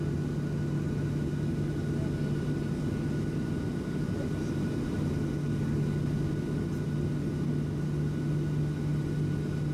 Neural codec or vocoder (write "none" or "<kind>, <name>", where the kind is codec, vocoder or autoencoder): none